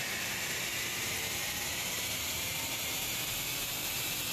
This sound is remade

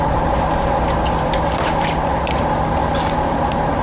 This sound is recorded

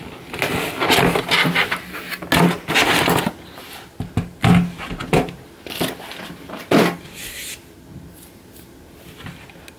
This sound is recorded